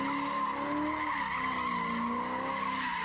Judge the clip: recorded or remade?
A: recorded